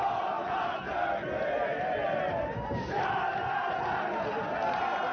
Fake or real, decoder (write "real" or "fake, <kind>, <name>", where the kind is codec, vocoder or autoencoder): real